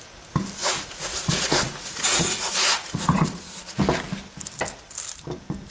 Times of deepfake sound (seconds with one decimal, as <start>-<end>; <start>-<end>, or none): 0.6-3.8